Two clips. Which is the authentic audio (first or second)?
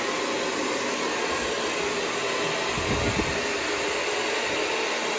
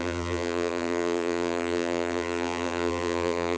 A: first